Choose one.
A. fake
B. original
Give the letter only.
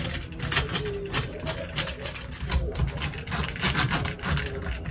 B